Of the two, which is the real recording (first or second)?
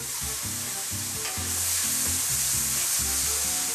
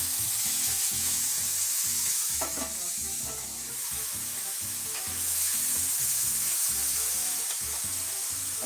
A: first